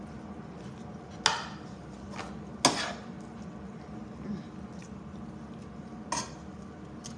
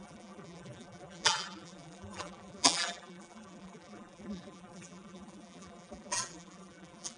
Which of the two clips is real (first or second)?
first